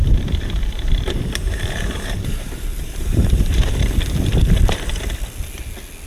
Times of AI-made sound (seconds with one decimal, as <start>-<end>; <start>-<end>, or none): 0.0-3.7